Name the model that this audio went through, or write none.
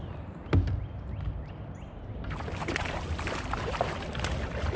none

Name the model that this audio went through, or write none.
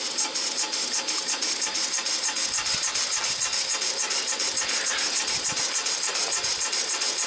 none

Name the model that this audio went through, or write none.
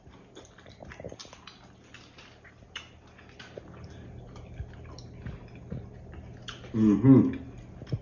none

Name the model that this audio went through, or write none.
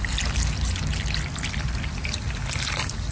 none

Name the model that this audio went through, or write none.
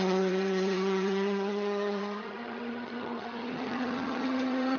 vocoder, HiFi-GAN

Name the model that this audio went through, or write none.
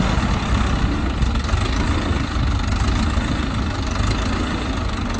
none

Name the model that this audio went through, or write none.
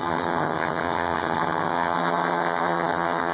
vocoder, HiFi-GAN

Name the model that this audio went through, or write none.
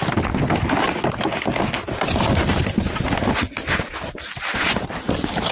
none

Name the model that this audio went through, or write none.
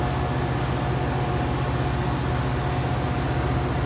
none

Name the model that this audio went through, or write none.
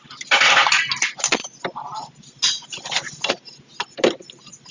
none